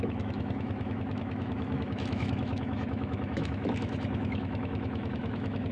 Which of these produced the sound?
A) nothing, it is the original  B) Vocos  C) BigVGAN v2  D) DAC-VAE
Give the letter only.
D